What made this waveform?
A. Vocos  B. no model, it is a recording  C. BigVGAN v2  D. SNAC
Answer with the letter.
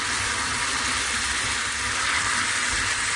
B